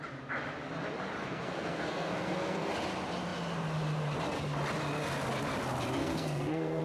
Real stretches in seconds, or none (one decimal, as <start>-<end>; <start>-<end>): 0.0-1.2; 2.7-6.0